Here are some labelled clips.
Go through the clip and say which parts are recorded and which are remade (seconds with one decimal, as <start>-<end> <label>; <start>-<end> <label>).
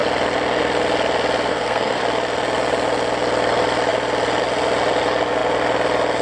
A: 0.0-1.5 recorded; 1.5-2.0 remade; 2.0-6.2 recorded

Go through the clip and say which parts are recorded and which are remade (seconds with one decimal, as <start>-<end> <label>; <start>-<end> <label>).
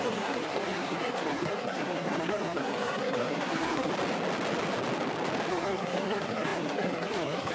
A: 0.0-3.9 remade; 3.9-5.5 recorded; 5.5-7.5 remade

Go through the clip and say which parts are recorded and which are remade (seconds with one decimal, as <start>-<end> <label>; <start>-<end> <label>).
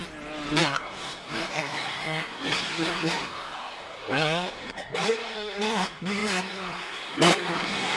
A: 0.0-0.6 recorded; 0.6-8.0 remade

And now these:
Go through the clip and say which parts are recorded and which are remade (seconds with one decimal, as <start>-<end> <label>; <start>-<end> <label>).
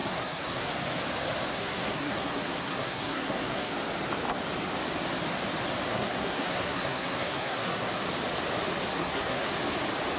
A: 0.0-0.7 remade; 0.7-1.5 recorded; 1.5-3.7 remade; 3.7-5.9 recorded; 5.9-7.9 remade; 7.9-8.9 recorded; 8.9-9.5 remade; 9.5-10.2 recorded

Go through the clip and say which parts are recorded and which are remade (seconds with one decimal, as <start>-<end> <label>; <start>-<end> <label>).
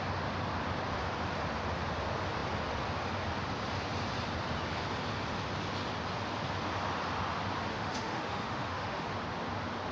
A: 0.0-7.7 recorded; 7.7-9.1 remade; 9.1-9.9 recorded